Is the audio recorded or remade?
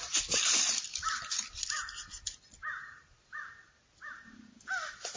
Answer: recorded